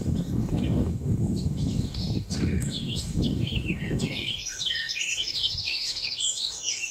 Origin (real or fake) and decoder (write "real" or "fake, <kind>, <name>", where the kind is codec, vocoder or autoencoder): fake, codec, DAC